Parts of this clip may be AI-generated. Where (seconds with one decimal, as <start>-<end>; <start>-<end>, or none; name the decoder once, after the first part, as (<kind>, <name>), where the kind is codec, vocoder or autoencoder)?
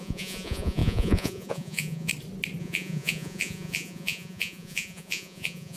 0.0-2.1 (vocoder, Vocos); 2.6-5.8